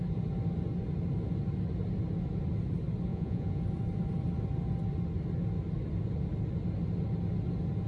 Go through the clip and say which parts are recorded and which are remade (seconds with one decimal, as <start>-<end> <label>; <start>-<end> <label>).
0.0-3.1 recorded; 3.1-3.6 remade; 3.6-7.9 recorded